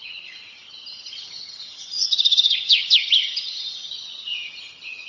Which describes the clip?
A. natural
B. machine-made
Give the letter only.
B